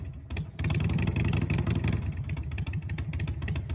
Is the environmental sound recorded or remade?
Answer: recorded